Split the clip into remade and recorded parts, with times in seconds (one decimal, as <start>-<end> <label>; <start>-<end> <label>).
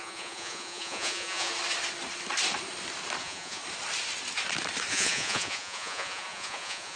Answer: 0.0-1.5 remade; 1.5-3.2 recorded; 3.2-3.6 remade; 3.6-4.9 recorded; 4.9-7.0 remade